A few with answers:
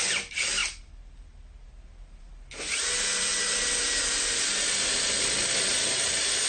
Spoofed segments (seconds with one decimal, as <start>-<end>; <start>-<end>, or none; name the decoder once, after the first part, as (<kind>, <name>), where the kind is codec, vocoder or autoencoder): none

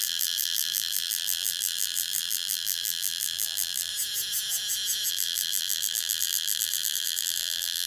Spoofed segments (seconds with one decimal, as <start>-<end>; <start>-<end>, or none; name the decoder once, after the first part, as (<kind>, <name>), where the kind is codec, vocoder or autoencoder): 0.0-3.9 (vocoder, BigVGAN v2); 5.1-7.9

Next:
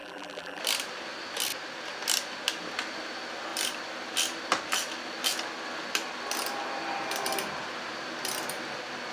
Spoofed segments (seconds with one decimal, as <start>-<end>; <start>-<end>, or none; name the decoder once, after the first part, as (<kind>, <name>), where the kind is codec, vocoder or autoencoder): 0.0-0.6 (vocoder, BigVGAN v2)

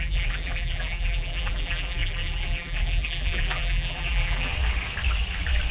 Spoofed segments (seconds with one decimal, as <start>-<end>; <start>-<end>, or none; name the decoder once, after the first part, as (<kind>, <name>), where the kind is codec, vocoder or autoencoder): 0.0-4.5 (vocoder, BigVGAN v2)

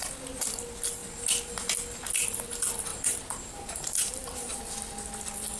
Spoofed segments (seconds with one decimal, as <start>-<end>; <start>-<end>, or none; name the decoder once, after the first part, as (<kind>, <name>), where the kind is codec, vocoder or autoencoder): 2.9-4.6 (vocoder, BigVGAN v2)

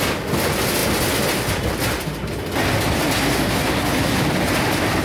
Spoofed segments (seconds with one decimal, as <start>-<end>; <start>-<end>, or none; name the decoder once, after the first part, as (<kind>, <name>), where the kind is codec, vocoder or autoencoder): none